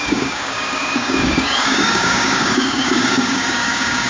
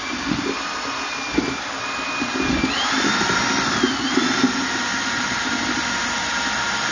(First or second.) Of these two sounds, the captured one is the second